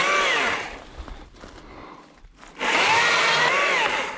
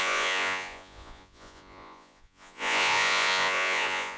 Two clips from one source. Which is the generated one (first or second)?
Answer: second